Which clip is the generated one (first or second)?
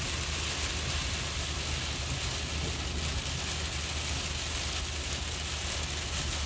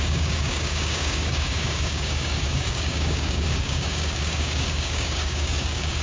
second